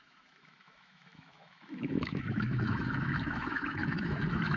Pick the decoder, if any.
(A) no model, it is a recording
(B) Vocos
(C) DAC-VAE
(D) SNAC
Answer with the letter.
C